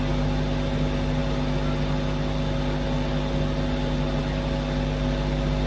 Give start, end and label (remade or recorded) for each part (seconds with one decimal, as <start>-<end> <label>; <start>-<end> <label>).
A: 0.0-5.7 recorded